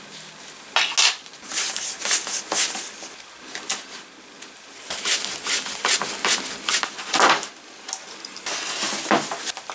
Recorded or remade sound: recorded